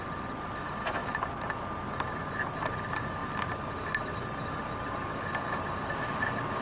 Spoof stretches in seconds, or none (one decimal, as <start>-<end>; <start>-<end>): none